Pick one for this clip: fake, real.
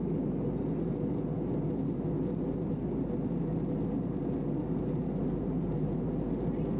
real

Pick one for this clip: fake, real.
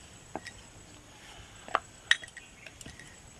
real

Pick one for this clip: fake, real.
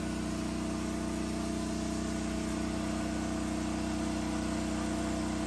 real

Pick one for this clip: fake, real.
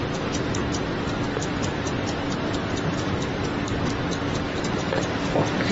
fake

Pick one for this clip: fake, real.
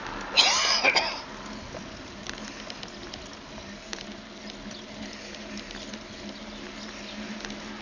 real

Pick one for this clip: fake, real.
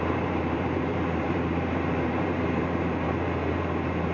fake